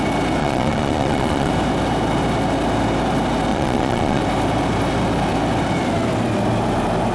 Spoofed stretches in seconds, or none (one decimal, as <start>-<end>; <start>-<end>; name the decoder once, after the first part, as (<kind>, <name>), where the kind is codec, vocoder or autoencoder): 0.4-1.5 (vocoder, Vocos); 3.5-4.2